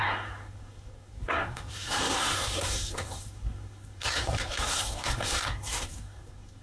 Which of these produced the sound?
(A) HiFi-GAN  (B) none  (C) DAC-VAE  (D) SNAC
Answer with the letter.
D